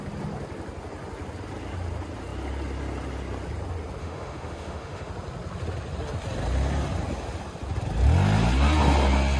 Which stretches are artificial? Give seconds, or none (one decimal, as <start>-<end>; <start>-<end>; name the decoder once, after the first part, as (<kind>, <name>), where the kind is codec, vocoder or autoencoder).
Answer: 4.0-5.1 (autoencoder, DAC-VAE)